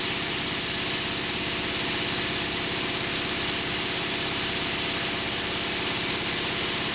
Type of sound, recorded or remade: recorded